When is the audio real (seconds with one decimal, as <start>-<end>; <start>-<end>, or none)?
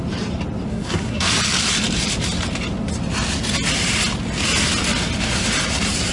0.0-0.7; 1.3-6.1